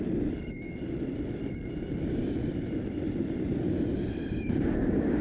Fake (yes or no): no